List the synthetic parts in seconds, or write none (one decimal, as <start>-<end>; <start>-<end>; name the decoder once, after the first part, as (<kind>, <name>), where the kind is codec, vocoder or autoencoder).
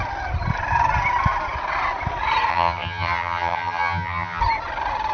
2.5-4.4 (vocoder, HiFi-GAN)